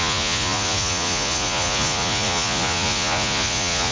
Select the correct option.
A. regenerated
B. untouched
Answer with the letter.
A